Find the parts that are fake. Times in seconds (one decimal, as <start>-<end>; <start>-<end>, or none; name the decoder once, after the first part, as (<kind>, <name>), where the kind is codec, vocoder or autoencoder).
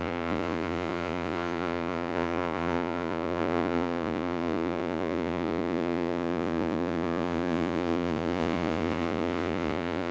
0.0-10.1 (vocoder, Vocos)